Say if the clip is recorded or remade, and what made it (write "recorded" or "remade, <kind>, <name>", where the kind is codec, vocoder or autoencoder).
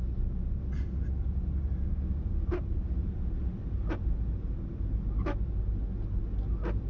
recorded